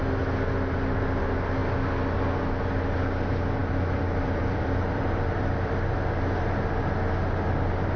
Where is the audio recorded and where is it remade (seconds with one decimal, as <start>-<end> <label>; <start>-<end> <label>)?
0.0-3.6 recorded; 3.6-5.7 remade; 5.7-8.0 recorded